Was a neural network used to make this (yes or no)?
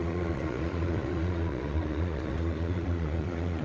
yes